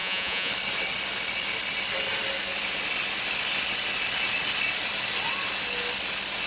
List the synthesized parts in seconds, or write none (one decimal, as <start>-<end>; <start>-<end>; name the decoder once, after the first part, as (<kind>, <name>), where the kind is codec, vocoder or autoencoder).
0.0-0.5 (vocoder, Vocos)